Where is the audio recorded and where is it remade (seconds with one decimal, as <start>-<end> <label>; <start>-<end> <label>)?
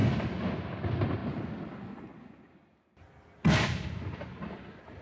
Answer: 0.0-5.0 recorded